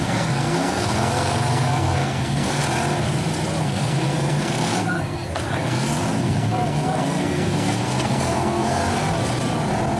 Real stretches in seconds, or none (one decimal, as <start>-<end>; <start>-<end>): 2.6-3.6; 8.8-10.0